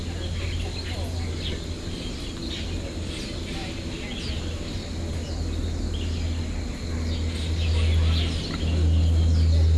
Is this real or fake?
real